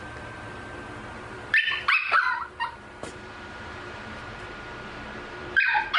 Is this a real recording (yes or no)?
no